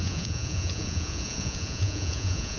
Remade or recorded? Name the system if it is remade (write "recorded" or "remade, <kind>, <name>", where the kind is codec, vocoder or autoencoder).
remade, vocoder, Vocos